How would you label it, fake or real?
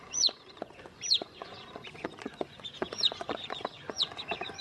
fake